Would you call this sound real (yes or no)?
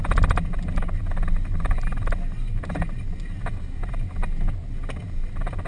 yes